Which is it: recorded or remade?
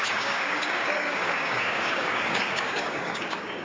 remade